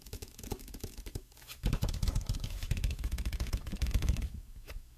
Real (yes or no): no